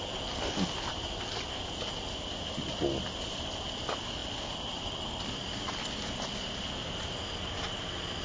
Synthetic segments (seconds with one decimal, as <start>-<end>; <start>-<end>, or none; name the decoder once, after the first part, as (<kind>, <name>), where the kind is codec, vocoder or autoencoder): 4.2-6.2 (vocoder, BigVGAN v2)